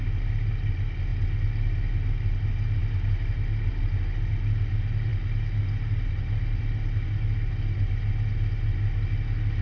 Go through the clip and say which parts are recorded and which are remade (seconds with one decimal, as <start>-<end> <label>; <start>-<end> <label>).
0.0-9.6 recorded